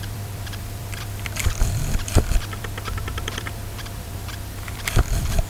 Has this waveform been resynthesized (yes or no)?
yes